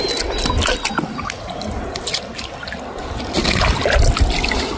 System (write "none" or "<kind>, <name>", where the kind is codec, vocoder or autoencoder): none